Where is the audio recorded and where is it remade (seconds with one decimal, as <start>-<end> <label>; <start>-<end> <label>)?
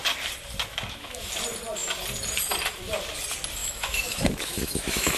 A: 0.0-0.7 recorded; 0.7-1.3 remade; 1.3-3.6 recorded; 3.6-5.2 remade